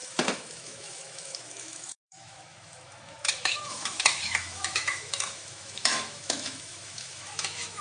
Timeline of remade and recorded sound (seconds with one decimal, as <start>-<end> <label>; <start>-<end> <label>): 0.0-7.8 remade